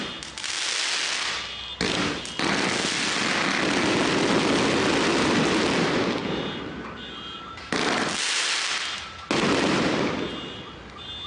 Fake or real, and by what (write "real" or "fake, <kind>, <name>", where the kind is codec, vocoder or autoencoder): real